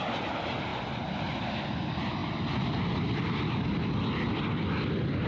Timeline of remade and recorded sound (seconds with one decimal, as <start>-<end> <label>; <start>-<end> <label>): 0.0-5.3 recorded